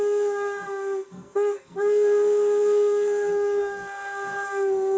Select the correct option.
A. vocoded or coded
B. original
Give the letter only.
A